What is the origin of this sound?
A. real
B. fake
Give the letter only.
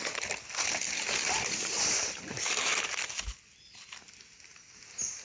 A